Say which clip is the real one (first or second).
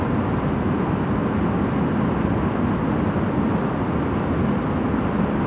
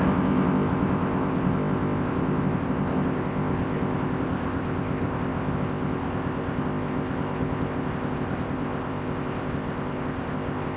first